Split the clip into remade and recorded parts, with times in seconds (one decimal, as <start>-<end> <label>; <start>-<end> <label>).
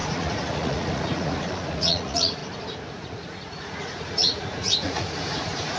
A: 0.0-2.4 remade; 2.4-2.9 recorded; 2.9-5.8 remade